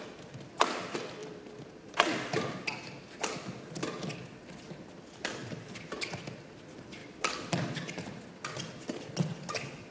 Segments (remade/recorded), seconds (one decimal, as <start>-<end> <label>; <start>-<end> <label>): 0.0-1.2 recorded; 1.2-2.5 remade; 2.5-5.4 recorded; 5.4-6.1 remade; 6.1-9.9 recorded